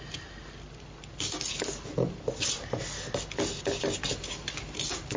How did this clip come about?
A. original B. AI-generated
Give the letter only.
A